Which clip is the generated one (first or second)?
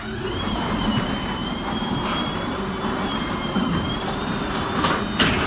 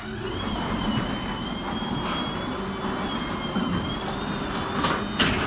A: first